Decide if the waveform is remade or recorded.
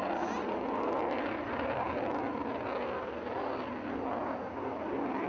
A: recorded